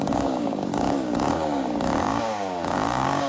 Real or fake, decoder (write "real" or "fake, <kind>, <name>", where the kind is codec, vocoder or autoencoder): fake, codec, DAC